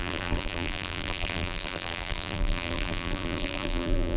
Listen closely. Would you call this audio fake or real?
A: fake